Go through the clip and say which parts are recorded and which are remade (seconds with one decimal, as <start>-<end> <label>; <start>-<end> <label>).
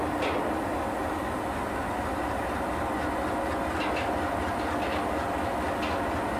0.0-6.4 recorded